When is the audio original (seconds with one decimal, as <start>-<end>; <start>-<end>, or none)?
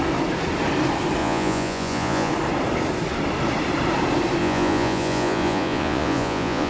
0.0-1.2; 2.3-4.4